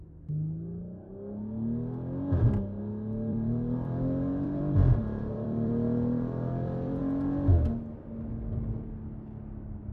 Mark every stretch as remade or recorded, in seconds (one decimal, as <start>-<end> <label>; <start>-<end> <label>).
0.0-3.3 recorded; 3.3-7.0 remade; 7.0-9.9 recorded